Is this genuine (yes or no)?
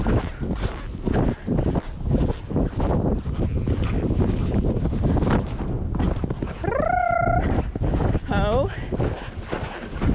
yes